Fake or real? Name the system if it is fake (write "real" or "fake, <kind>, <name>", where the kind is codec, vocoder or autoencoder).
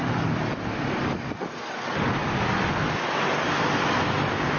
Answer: real